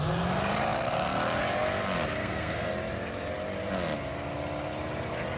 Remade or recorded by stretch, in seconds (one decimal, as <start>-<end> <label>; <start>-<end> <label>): 0.0-2.2 recorded; 2.2-2.7 remade; 2.7-5.4 recorded